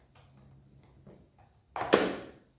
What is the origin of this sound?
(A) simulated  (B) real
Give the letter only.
B